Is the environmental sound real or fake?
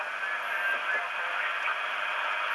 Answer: real